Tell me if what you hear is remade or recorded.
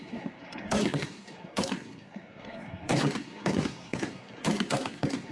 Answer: remade